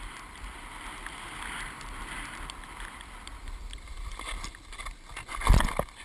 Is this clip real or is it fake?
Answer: real